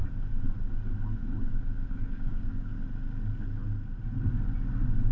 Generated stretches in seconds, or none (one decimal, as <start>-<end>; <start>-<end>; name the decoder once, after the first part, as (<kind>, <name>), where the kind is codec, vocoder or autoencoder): 1.9-2.7 (codec, DAC)